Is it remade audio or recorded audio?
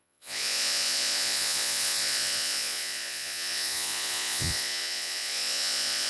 remade